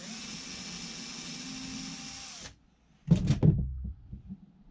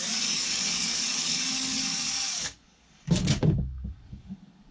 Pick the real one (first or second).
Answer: first